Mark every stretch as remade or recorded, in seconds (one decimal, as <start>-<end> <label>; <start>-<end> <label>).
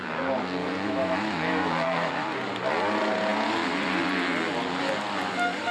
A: 0.0-0.6 recorded; 0.6-2.1 remade; 2.1-5.7 recorded